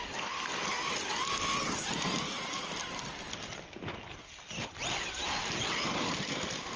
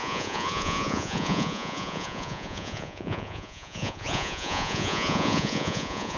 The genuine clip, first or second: first